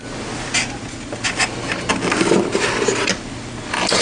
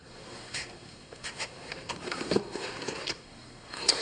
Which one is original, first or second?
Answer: first